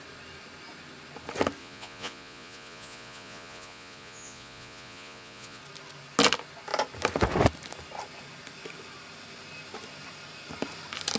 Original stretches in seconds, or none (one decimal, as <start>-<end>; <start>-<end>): 0.0-1.6; 5.6-11.2

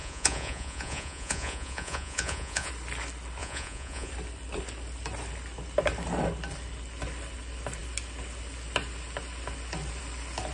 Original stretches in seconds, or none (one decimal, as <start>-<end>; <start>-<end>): 2.7-3.4; 4.1-10.5